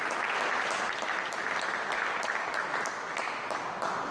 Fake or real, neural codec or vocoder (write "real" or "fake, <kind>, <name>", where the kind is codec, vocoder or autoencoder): real